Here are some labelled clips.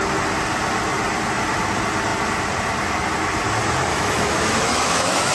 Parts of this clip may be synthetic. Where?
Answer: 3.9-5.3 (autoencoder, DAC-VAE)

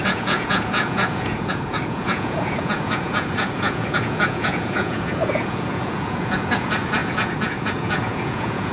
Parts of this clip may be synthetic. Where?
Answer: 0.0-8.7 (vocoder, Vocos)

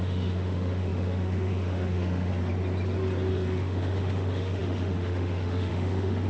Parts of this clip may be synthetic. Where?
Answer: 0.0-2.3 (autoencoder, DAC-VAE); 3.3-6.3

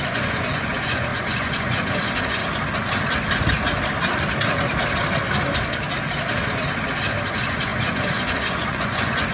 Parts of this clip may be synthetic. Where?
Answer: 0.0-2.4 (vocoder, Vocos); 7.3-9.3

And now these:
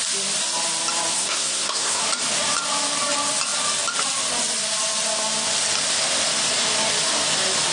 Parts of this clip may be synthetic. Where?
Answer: 1.1-2.0 (codec, SNAC)

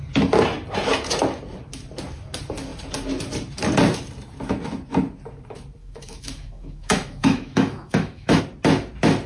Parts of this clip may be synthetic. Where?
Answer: 5.8-8.4 (autoencoder, DAC-VAE)